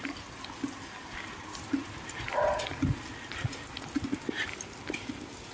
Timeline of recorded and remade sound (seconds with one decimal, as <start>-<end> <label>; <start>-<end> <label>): 0.0-5.5 recorded